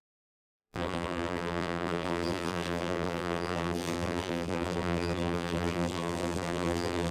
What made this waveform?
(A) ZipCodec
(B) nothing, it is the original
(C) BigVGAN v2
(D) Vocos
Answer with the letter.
C